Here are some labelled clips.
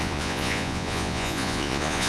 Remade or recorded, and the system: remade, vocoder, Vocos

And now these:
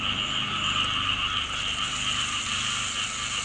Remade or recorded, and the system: recorded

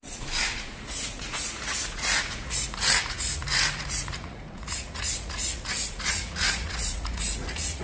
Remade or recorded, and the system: remade, vocoder, Vocos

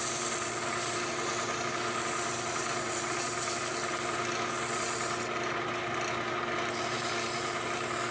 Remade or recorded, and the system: recorded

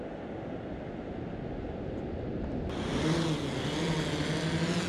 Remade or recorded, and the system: recorded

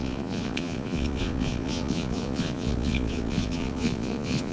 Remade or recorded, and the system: remade, vocoder, Vocos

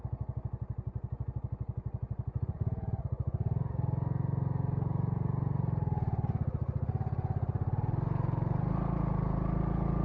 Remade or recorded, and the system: recorded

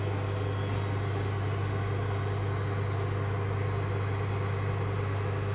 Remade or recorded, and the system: recorded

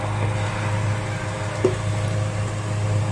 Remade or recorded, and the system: recorded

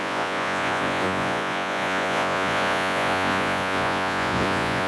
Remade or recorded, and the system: remade, vocoder, Vocos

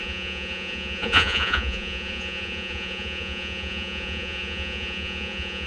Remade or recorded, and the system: remade, vocoder, Vocos